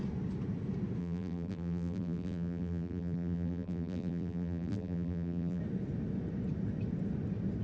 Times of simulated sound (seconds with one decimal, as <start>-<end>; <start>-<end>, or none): 1.0-5.6